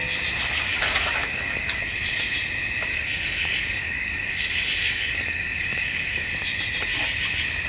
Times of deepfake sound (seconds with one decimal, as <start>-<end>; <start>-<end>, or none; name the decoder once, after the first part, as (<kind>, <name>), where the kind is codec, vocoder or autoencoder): 0.7-1.8 (codec, DAC); 2.9-6.3